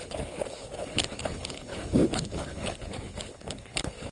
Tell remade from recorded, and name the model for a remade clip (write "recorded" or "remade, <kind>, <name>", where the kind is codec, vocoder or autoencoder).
remade, codec, HILCodec